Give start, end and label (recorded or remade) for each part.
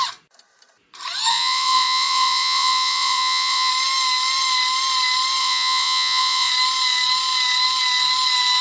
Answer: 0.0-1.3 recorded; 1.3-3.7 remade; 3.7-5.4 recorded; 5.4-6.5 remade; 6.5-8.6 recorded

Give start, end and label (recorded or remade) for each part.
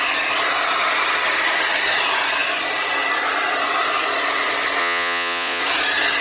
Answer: 0.0-4.8 recorded; 4.8-5.6 remade; 5.6-6.2 recorded